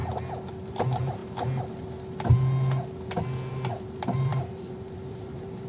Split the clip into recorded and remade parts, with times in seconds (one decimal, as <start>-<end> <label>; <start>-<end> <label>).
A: 0.0-0.7 recorded; 0.7-1.2 remade; 1.2-3.5 recorded; 3.5-5.7 remade